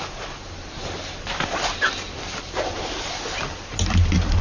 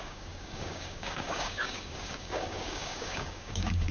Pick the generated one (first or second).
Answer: second